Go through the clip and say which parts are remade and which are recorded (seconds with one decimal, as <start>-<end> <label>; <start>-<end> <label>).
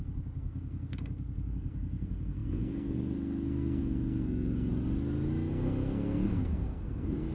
0.0-4.7 remade; 4.7-5.5 recorded; 5.5-7.3 remade